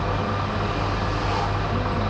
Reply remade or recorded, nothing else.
recorded